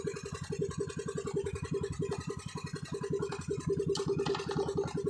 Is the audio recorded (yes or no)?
yes